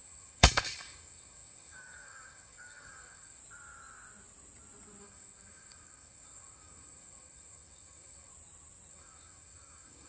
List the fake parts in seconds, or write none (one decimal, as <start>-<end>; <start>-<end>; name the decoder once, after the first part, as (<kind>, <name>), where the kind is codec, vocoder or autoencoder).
0.0-3.4 (codec, DAC); 5.0-8.3; 8.9-10.1

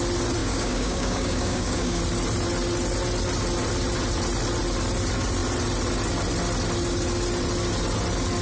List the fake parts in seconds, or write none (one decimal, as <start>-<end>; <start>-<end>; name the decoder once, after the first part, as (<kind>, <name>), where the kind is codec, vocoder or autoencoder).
0.4-2.0 (codec, DAC)

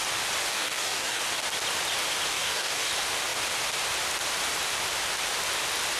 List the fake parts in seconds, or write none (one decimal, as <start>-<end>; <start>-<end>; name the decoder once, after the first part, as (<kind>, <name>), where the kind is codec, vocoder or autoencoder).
0.5-1.2 (codec, DAC); 2.3-2.9

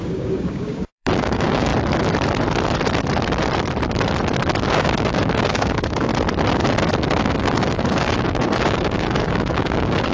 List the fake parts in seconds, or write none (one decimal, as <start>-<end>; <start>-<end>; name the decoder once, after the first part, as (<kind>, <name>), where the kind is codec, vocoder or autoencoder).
0.0-1.7 (codec, DAC); 4.7-6.1; 7.2-10.1

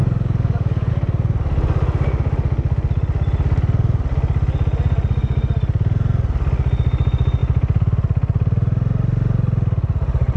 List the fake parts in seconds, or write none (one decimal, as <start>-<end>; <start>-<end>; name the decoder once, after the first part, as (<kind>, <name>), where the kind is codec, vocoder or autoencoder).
0.0-0.9 (codec, DAC)